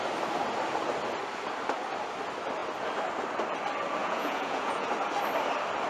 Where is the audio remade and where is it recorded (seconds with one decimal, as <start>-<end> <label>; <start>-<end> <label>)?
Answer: 0.0-4.0 recorded; 4.0-4.9 remade; 4.9-5.9 recorded